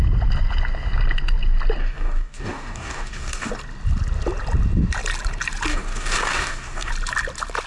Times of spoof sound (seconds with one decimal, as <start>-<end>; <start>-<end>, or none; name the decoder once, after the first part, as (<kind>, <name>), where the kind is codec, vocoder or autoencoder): 1.8-3.5 (codec, DAC); 5.7-6.9